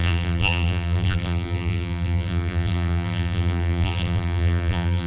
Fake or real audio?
fake